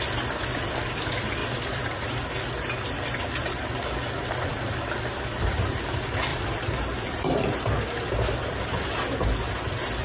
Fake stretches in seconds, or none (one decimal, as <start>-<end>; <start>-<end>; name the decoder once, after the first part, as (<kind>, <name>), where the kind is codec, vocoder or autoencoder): 1.4-2.3 (vocoder, BigVGAN v2); 4.5-5.7; 6.3-7.7